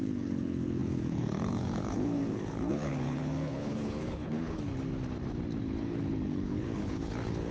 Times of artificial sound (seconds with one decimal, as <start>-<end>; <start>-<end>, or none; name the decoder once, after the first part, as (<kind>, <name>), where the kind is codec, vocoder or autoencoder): 0.0-4.7 (codec, HILCodec); 5.6-7.5